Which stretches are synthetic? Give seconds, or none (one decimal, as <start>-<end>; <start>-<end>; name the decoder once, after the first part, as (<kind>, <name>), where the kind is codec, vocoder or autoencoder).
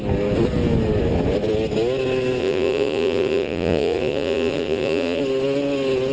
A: 2.4-5.2 (vocoder, Vocos)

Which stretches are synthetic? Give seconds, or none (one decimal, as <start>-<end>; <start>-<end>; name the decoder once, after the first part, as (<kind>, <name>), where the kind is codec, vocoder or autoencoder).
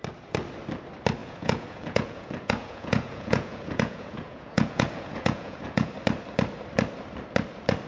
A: 1.2-5.9 (vocoder, Vocos)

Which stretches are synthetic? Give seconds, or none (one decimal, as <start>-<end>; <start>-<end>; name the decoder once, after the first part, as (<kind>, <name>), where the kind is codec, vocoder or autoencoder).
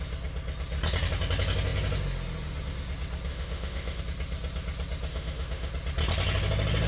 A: 3.3-4.0 (autoencoder, DAC-VAE); 5.1-5.7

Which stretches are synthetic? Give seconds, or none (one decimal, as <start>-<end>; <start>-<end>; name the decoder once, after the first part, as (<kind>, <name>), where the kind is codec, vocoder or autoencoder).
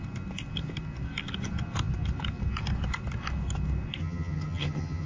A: 4.0-5.1 (vocoder, HiFi-GAN)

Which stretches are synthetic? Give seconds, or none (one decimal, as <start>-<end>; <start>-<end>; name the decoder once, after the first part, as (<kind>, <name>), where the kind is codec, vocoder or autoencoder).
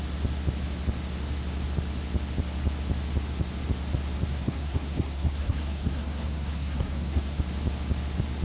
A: 4.3-7.4 (codec, SNAC)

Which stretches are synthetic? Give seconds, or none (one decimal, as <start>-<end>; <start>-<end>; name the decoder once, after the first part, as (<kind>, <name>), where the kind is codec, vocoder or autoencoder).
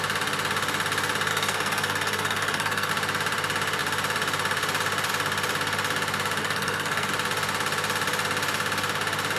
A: 1.3-2.9 (codec, SNAC); 6.4-7.1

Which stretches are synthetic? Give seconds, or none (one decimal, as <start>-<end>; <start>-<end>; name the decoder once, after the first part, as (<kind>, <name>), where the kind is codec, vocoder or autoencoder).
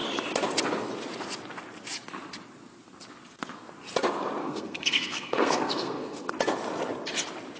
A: 4.4-6.3 (codec, SNAC)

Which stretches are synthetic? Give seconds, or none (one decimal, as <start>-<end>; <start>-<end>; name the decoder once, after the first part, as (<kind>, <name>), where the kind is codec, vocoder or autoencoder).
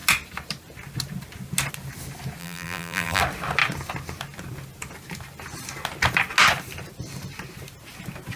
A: 2.4-3.2 (vocoder, BigVGAN v2)